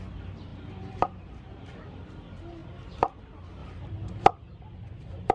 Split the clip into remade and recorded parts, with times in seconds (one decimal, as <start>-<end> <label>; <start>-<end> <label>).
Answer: 0.0-2.6 recorded; 2.6-3.2 remade; 3.2-5.3 recorded